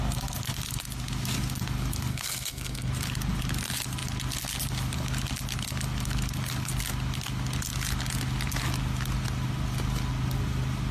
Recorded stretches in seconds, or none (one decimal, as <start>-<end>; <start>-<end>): 0.0-2.1; 2.9-10.9